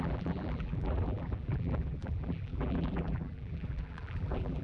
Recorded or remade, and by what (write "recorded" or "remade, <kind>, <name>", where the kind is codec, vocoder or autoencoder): remade, vocoder, BigVGAN v2